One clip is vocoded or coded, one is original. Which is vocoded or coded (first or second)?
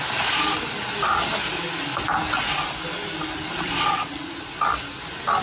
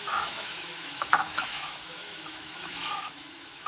second